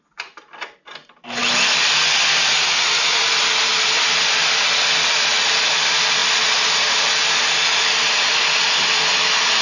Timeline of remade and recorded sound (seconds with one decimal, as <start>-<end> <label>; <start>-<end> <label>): 0.0-9.6 recorded